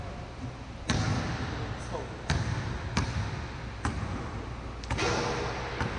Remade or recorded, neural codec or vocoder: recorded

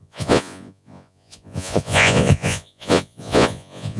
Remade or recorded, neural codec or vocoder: remade, vocoder, Vocos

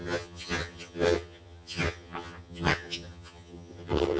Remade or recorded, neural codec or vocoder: remade, vocoder, HiFi-GAN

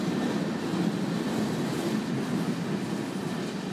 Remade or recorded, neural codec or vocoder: recorded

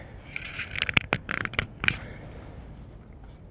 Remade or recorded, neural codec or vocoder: recorded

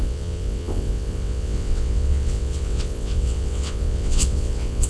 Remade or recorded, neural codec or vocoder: remade, vocoder, WaveNeXt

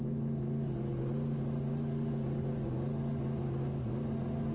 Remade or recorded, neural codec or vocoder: recorded